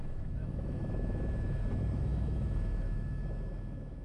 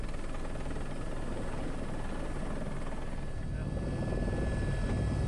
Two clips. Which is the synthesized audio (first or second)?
first